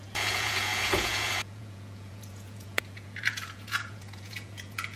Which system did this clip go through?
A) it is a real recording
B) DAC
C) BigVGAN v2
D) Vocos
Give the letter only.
D